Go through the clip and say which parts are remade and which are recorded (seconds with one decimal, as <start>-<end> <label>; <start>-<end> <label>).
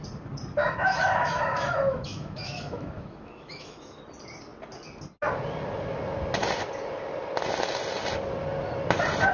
0.0-0.6 recorded; 0.6-4.0 remade; 4.0-9.3 recorded